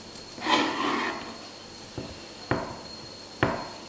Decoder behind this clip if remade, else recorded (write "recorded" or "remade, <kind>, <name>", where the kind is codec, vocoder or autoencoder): recorded